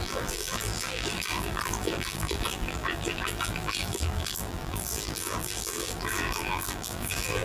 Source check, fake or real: fake